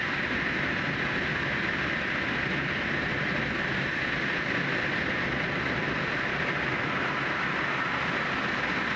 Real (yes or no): yes